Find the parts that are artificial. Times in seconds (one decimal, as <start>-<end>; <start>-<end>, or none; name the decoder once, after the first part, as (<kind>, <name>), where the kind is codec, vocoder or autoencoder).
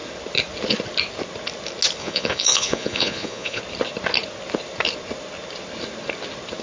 2.0-3.6 (vocoder, Vocos)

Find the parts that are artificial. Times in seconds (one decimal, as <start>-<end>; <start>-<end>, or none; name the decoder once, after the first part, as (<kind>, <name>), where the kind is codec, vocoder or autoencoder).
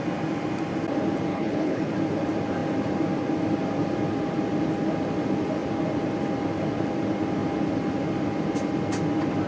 1.3-1.9 (codec, HILCodec)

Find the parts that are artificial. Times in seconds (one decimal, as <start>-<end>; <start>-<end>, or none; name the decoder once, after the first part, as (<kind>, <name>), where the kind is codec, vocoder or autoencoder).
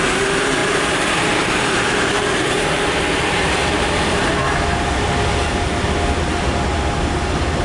0.6-4.3 (vocoder, BigVGAN v2)